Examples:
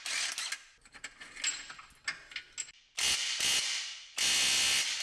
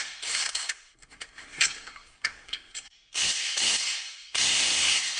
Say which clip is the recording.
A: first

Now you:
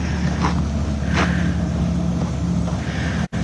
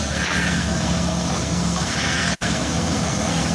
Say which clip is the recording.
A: first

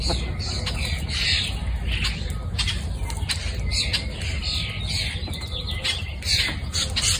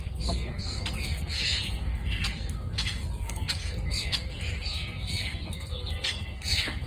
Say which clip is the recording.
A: first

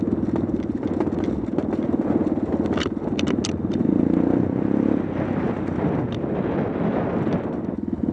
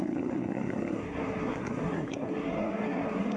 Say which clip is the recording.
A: first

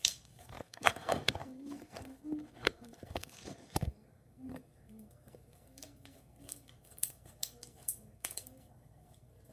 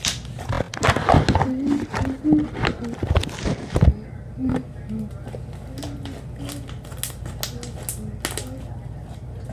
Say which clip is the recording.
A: second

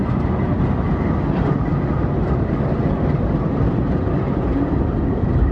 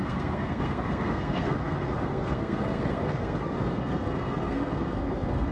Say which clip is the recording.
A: first